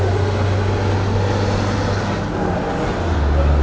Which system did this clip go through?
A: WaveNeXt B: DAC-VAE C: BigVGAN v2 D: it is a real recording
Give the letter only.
D